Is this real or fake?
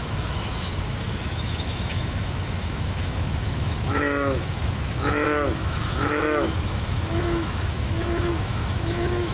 fake